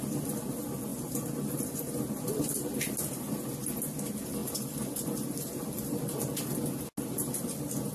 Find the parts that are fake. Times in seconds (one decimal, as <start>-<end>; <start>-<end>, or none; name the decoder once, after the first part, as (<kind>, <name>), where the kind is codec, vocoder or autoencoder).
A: none

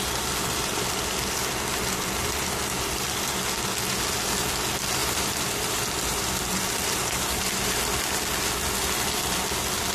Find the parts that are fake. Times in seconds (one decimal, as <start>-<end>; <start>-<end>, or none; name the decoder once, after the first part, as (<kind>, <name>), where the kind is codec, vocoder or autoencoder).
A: 5.0-7.4 (vocoder, BigVGAN v2)

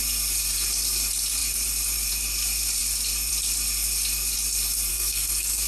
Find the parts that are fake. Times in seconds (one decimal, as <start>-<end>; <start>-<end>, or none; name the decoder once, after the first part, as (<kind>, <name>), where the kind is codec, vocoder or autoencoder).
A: 4.9-5.7 (codec, SNAC)